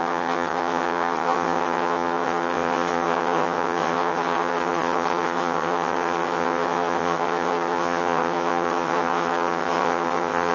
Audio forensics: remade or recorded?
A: remade